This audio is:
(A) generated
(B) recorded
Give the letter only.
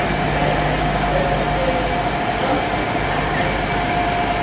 B